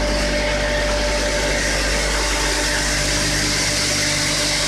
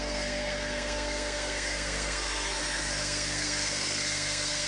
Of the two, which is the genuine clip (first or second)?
first